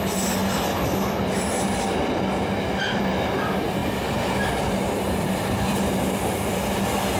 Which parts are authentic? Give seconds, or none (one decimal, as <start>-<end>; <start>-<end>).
0.0-7.2